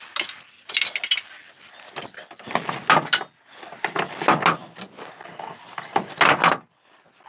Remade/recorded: recorded